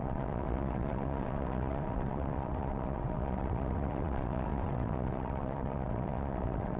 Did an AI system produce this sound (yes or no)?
yes